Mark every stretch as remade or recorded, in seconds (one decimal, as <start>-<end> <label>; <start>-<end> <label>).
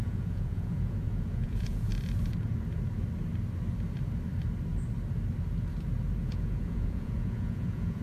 0.0-1.9 remade; 1.9-6.2 recorded; 6.2-8.0 remade